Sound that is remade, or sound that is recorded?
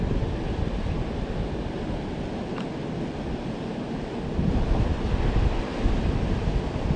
recorded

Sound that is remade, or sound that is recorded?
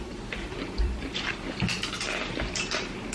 remade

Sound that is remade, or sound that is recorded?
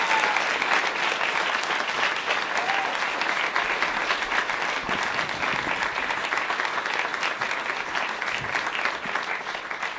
recorded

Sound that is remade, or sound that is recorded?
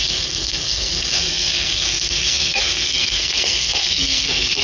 remade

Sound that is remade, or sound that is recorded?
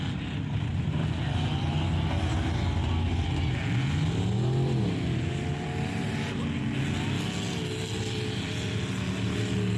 recorded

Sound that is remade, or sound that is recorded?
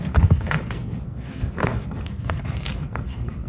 remade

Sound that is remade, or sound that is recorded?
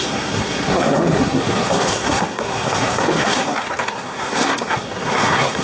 remade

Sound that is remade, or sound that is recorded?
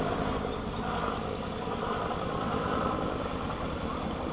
recorded